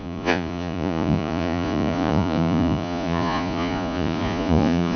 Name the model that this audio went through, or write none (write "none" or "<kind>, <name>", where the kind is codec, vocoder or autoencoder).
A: vocoder, Vocos